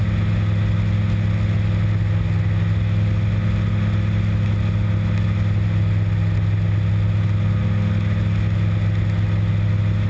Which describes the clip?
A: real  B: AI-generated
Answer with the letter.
A